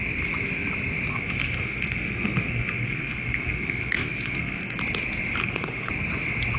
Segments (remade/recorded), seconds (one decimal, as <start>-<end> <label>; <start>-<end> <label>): 0.0-1.1 recorded; 1.1-4.8 remade; 4.8-5.4 recorded; 5.4-5.9 remade; 5.9-6.6 recorded